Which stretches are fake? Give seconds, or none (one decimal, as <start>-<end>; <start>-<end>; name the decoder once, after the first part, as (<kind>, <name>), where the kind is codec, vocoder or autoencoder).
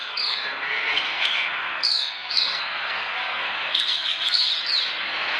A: 0.0-4.5 (codec, SNAC); 5.0-5.4